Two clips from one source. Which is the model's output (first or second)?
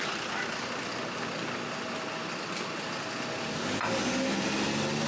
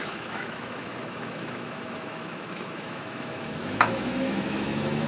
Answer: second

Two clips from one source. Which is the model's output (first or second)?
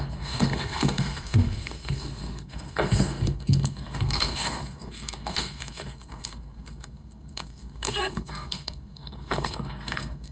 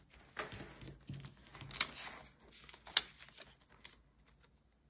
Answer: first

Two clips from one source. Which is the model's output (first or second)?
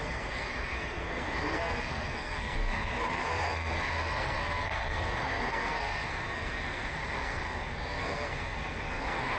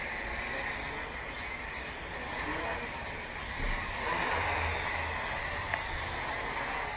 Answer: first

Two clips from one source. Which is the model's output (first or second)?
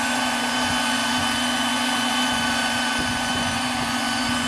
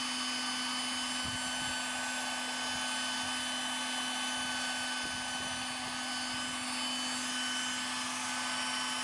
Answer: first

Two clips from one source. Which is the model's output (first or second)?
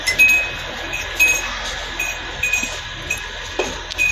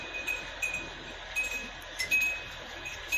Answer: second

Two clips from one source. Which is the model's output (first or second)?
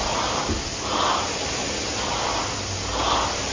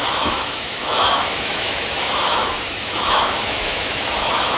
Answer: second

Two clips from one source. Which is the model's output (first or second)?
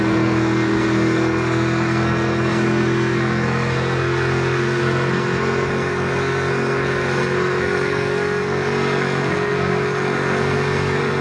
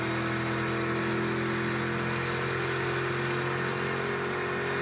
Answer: first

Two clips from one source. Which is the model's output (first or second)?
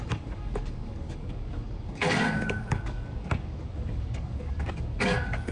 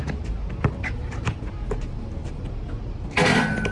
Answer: first